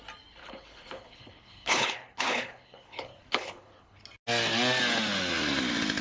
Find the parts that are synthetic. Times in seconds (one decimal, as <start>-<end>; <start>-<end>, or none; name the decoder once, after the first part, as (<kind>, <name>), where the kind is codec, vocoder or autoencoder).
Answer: 0.4-4.0 (codec, HILCodec)